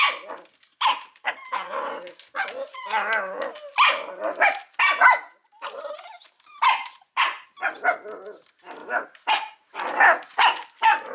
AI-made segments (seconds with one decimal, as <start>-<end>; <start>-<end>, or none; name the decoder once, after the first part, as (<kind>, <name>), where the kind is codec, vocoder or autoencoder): 0.7-1.3 (vocoder, BigVGAN v2); 5.4-7.2; 8.8-9.8